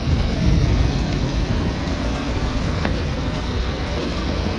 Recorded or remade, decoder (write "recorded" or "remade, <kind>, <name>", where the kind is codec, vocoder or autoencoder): remade, codec, SNAC